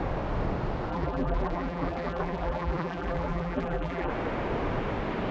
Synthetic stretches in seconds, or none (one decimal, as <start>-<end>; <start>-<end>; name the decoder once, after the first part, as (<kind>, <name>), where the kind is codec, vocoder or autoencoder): 0.9-4.1 (vocoder, BigVGAN v2)